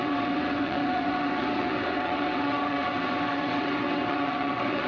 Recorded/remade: remade